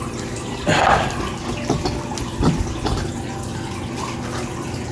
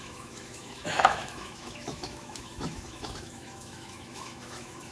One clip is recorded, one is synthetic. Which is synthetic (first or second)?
second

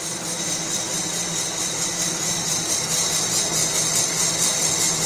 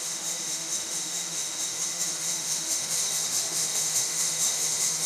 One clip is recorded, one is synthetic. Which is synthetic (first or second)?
second